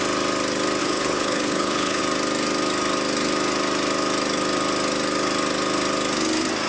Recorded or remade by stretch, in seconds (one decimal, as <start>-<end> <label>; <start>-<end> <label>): 0.0-0.8 recorded; 0.8-2.0 remade; 2.0-6.7 recorded